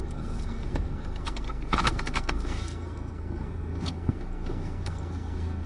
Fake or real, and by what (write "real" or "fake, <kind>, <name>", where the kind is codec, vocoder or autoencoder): fake, codec, SNAC